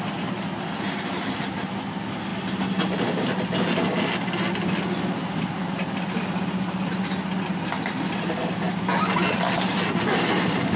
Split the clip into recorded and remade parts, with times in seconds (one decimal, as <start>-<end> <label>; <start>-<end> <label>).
0.0-10.8 recorded